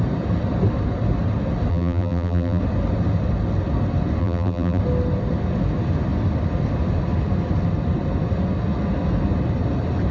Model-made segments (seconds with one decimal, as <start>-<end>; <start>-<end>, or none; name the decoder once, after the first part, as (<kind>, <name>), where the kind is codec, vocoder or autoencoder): 1.7-2.6 (vocoder, BigVGAN v2); 4.2-4.8